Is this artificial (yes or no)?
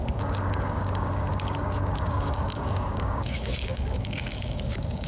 yes